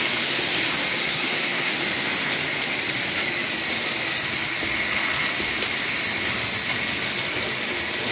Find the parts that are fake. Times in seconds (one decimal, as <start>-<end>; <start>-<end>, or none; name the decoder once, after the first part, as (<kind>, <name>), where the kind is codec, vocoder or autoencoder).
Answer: 1.0-1.7 (codec, SNAC)